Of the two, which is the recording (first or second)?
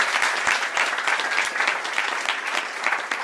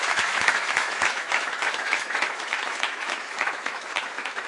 first